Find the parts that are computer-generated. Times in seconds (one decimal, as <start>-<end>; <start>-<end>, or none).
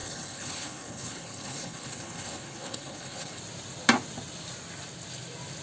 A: 0.0-3.4